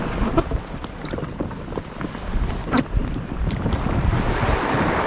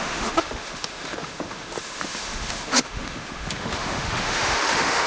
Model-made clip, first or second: second